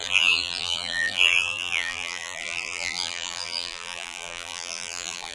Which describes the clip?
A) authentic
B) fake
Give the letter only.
B